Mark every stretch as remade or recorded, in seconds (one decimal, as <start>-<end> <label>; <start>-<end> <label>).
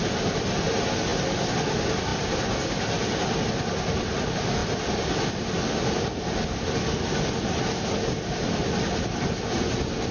0.0-10.1 recorded